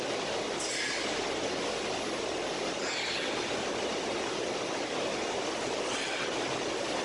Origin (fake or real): real